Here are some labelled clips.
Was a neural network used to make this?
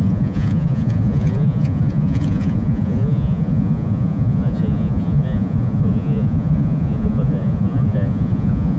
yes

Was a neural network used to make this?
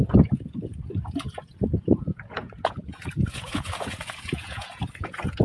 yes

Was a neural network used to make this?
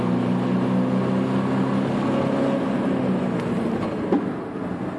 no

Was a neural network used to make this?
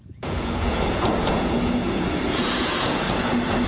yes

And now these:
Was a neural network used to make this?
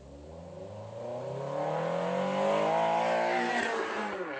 no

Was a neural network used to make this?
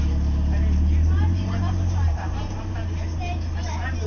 no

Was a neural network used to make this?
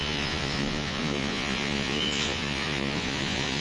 yes